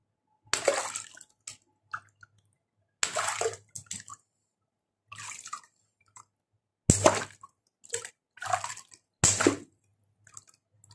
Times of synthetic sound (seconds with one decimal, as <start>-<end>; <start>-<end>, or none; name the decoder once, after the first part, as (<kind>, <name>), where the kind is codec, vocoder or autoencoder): 4.1-6.2 (vocoder, BigVGAN v2)